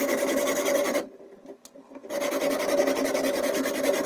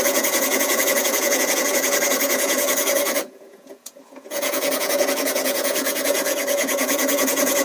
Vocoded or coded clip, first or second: second